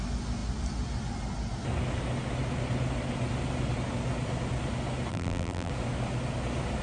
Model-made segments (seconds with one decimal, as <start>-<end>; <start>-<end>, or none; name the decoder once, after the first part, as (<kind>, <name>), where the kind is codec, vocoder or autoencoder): 5.1-5.7 (vocoder, BigVGAN v2)